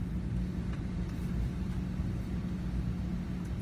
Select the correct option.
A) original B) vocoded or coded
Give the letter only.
A